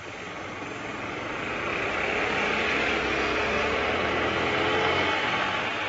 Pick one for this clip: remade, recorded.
recorded